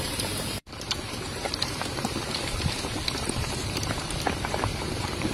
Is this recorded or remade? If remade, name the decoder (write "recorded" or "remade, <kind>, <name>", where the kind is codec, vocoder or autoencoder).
remade, vocoder, BigVGAN v2